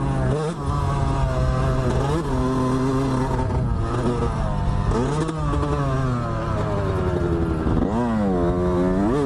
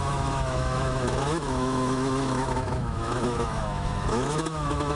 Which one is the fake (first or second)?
second